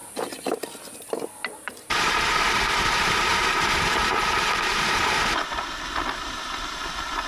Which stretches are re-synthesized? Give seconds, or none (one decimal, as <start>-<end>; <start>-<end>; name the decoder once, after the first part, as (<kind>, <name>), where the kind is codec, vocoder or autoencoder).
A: 0.0-0.6 (vocoder, BigVGAN v2); 1.5-5.8